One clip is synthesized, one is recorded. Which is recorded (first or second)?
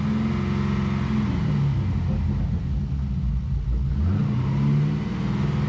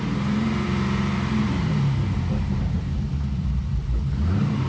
first